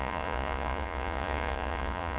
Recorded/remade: remade